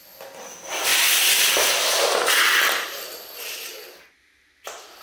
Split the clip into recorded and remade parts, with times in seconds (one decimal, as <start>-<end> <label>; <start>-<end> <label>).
0.0-5.0 recorded